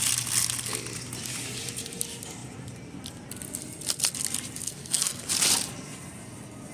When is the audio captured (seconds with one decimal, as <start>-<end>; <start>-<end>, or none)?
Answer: 0.0-4.6; 5.3-6.7

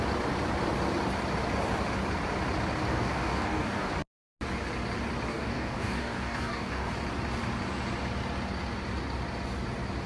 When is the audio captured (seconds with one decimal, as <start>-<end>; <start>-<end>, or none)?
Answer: 0.0-2.9; 3.9-5.3; 6.9-10.1

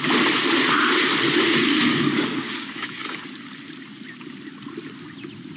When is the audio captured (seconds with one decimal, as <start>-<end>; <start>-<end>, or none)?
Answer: 0.0-1.9; 3.2-5.6

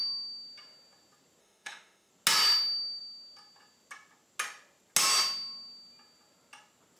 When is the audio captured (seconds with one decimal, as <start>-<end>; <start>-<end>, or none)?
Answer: 0.0-1.4; 2.1-7.0

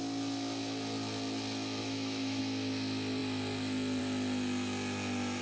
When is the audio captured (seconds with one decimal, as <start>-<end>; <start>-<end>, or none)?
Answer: 0.0-1.8; 2.4-5.4

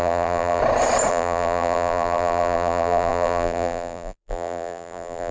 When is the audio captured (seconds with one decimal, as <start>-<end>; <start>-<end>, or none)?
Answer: 0.6-1.1